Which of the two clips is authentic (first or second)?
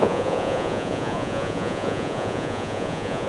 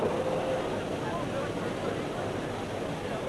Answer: second